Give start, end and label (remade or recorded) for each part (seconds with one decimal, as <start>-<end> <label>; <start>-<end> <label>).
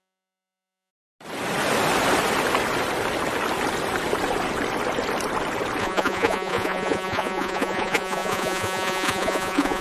0.0-0.9 remade; 0.9-5.8 recorded; 5.8-9.8 remade